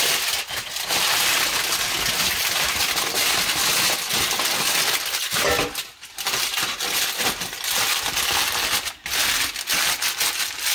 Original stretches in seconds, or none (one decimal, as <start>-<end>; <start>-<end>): 0.0-10.7